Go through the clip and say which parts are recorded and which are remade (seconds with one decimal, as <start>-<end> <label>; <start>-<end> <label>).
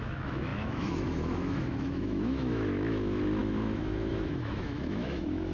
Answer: 0.0-5.5 remade